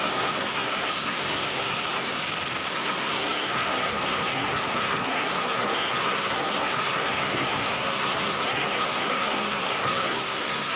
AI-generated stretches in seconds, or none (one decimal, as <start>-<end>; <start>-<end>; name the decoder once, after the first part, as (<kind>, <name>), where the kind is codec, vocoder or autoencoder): 0.0-2.2 (codec, SNAC); 2.7-10.8

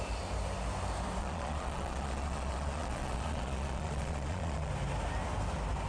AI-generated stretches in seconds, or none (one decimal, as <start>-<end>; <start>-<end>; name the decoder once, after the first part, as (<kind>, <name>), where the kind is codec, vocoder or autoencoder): 1.2-4.7 (vocoder, Vocos)

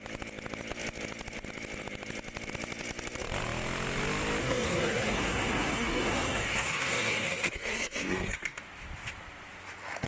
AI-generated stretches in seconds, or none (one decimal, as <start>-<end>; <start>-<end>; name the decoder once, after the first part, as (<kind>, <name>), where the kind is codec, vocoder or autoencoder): 4.4-8.6 (codec, SNAC)

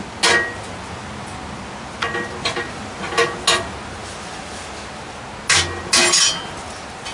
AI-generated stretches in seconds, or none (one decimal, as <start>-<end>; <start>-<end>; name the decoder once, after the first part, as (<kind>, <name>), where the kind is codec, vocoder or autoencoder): none

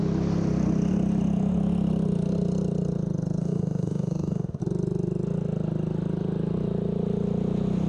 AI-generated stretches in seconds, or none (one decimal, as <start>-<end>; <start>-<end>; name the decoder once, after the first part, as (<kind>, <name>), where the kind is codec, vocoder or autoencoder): 3.4-4.6 (autoencoder, DAC-VAE)

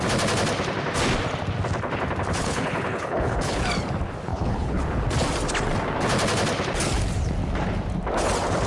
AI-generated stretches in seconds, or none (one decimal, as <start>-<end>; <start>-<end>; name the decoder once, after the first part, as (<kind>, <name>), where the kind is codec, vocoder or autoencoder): 2.4-3.6 (codec, HILCodec); 4.3-4.8

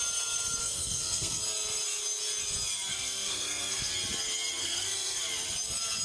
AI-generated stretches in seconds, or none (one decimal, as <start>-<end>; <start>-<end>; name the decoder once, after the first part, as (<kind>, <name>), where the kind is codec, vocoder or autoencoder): 0.6-1.4 (codec, SNAC); 2.9-3.9; 4.6-5.2

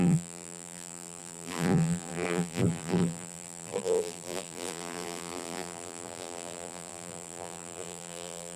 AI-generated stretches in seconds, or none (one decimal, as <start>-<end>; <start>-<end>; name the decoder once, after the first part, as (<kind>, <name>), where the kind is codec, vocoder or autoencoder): 0.0-8.6 (vocoder, BigVGAN v2)